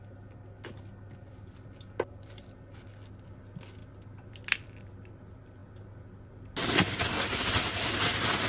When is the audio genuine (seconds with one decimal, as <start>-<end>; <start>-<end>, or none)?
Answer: 0.0-8.5

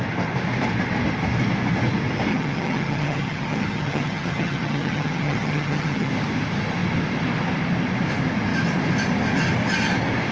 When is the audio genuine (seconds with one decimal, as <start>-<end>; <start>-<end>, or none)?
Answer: 0.0-2.3; 6.1-10.3

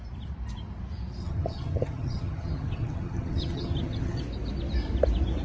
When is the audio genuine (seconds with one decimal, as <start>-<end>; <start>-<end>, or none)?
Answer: 0.0-1.2; 4.2-5.4

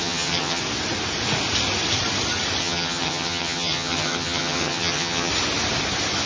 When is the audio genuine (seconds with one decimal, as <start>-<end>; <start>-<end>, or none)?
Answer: 0.6-2.6; 5.3-6.3